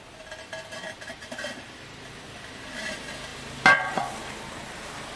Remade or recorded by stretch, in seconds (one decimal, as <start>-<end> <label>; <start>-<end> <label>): 0.0-5.2 recorded